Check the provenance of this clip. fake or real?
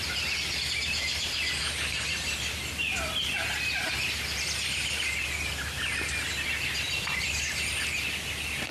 real